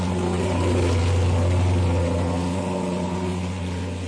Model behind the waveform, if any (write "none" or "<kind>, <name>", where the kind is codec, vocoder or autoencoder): none